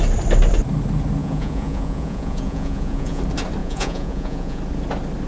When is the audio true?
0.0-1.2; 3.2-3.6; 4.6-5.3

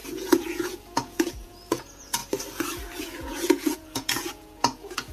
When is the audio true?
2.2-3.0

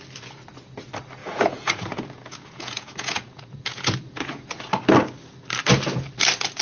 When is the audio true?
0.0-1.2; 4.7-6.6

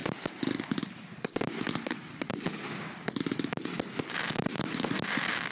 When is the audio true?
0.0-5.5

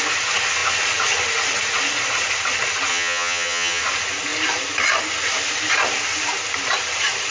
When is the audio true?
0.0-2.9; 3.8-7.3